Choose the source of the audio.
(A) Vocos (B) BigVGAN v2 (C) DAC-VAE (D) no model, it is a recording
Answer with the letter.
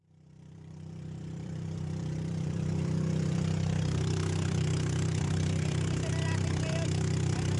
B